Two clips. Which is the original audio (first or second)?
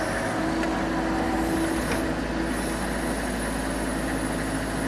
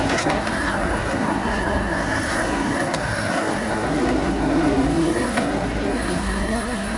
first